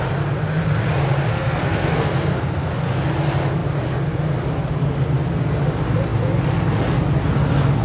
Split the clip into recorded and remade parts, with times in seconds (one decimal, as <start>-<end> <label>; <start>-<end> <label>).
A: 0.0-1.3 recorded; 1.3-2.7 remade; 2.7-7.8 recorded